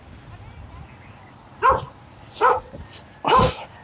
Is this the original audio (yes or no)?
yes